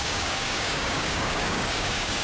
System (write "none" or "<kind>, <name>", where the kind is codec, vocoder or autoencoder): codec, DAC